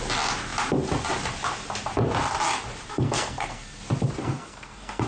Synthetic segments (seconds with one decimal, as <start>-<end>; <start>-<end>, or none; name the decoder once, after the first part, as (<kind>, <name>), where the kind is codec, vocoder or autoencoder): 2.9-3.8 (codec, SNAC); 4.2-5.1